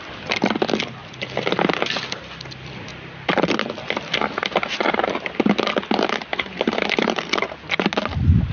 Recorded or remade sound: recorded